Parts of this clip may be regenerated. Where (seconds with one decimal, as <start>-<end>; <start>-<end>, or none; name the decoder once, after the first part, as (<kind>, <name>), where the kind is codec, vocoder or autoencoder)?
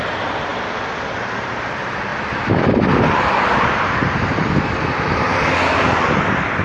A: 0.0-0.5 (vocoder, BigVGAN v2); 1.0-2.1; 6.1-6.6